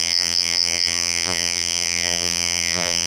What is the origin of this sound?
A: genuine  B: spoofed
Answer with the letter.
B